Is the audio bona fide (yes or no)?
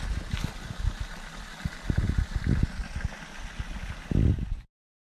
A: yes